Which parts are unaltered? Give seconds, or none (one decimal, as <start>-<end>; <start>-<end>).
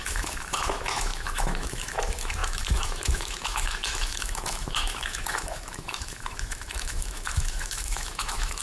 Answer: none